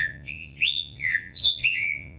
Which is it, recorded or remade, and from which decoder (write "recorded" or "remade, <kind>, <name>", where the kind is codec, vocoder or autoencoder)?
remade, vocoder, Vocos